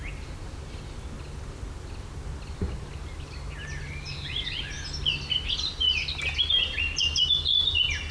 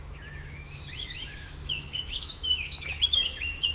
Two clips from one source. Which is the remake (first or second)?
second